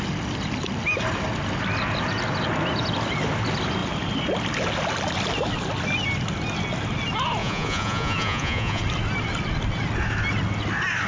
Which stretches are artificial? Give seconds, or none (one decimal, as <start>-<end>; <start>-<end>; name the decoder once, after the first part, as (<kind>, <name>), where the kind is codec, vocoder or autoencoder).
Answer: 7.4-8.8 (vocoder, Vocos)